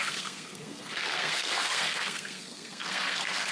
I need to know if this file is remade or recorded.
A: remade